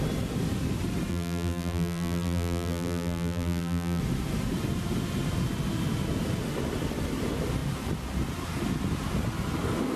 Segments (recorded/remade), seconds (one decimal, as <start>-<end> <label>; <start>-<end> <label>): 0.0-1.1 recorded; 1.1-4.0 remade; 4.0-10.0 recorded